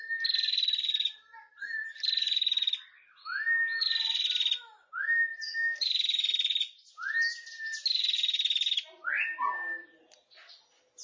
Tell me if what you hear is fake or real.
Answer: real